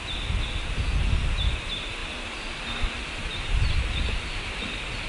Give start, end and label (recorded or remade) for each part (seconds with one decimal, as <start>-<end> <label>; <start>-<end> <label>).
0.0-5.1 recorded